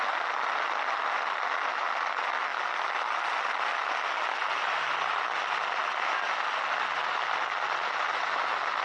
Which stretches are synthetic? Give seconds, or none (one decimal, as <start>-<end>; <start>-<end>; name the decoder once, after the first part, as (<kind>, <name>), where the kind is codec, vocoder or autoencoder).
none